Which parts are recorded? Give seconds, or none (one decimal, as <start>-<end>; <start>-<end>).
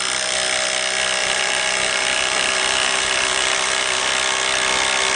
0.0-1.2; 4.1-5.2